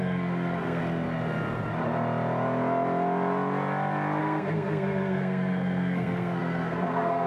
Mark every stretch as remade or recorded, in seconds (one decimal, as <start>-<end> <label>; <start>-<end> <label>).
0.0-0.8 remade; 0.8-4.2 recorded; 4.2-7.3 remade